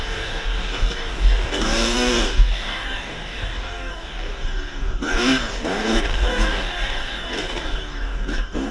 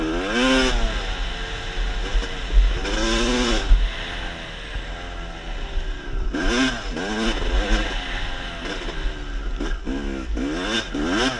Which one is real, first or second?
second